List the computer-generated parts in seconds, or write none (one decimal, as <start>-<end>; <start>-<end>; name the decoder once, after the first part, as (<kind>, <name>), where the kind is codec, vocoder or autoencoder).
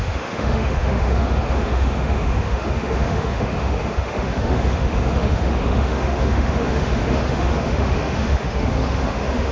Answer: 0.0-9.5 (autoencoder, DAC-VAE)